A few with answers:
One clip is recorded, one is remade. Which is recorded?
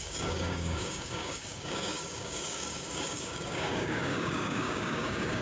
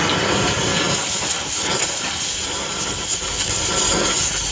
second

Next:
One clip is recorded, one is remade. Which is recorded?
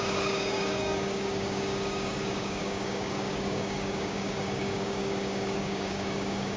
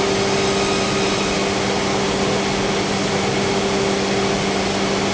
second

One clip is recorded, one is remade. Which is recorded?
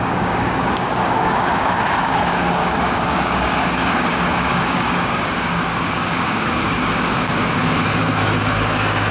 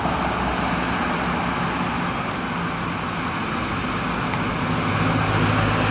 second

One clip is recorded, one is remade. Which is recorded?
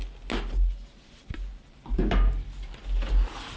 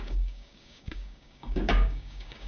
first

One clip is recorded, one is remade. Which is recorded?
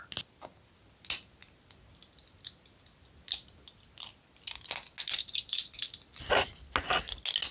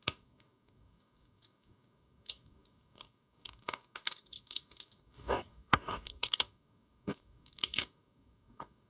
first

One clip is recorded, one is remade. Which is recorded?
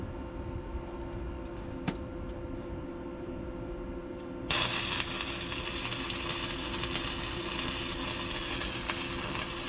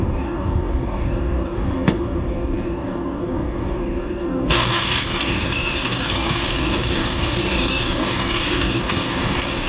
first